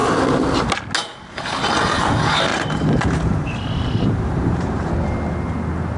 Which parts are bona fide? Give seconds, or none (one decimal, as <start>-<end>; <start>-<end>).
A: 0.6-2.5; 4.9-6.0